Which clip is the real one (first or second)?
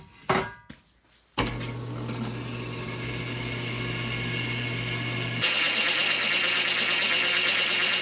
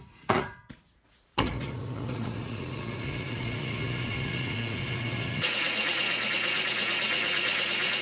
first